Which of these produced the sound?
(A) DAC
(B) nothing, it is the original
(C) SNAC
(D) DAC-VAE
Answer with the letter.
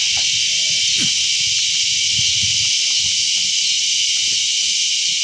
B